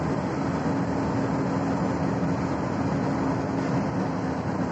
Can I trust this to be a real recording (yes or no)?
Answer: yes